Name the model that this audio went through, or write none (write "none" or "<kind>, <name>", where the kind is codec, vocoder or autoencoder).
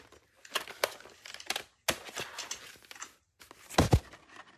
none